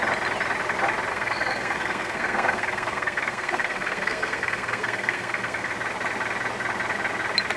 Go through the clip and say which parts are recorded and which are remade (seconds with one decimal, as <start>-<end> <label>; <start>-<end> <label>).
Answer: 0.0-1.1 recorded; 1.1-5.7 remade; 5.7-7.6 recorded